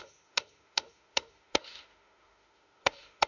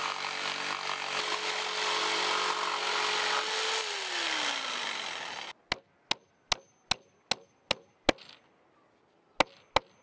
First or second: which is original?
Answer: second